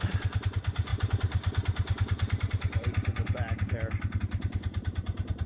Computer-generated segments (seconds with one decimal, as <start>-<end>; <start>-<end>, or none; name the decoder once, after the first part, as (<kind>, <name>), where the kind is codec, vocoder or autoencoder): 0.0-0.9 (vocoder, BigVGAN v2); 4.2-5.5